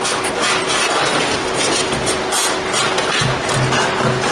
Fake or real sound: real